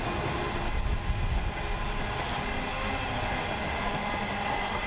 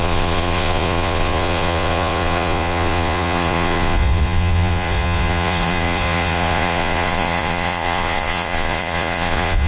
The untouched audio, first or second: first